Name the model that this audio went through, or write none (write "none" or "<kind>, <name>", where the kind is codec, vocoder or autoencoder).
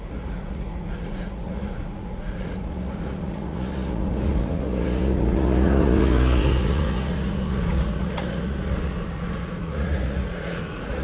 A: vocoder, Vocos